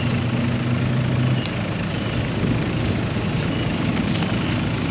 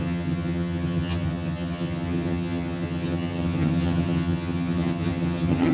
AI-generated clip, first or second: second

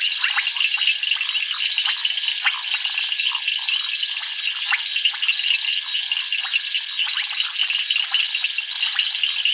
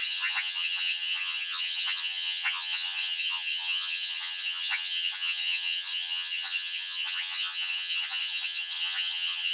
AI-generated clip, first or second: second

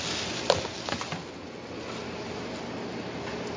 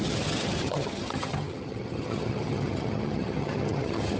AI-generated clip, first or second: second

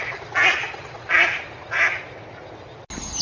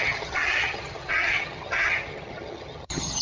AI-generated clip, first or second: second